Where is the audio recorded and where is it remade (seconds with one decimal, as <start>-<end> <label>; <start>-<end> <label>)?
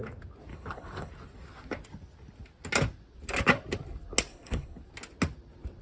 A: 0.0-0.5 recorded; 0.5-1.1 remade; 1.1-4.3 recorded; 4.3-4.8 remade; 4.8-5.8 recorded